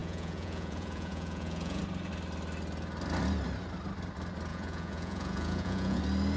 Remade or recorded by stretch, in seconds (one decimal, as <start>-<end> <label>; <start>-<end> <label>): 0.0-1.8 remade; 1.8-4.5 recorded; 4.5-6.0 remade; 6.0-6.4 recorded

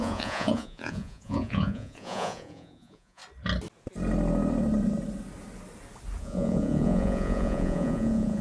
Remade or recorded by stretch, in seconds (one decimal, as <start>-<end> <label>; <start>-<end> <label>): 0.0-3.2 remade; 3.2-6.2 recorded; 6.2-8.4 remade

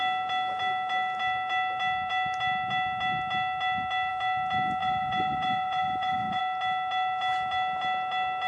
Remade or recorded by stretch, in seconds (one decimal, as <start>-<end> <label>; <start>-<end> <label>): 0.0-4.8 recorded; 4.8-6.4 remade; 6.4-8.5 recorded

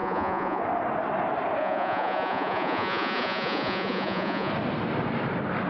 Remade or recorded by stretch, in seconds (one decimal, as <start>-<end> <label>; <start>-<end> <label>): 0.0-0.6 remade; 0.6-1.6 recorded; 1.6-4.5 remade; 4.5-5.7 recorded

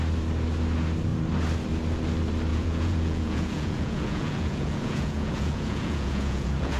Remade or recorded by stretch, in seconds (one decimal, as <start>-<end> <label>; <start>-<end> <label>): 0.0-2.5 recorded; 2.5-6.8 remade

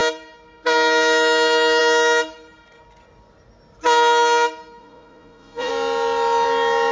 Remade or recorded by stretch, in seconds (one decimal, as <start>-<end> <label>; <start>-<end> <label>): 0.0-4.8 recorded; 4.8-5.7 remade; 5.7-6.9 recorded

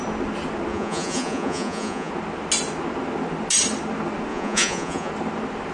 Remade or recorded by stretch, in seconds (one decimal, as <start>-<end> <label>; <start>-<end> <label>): 0.0-0.7 recorded; 0.7-2.1 remade; 2.1-4.3 recorded; 4.3-5.1 remade; 5.1-5.7 recorded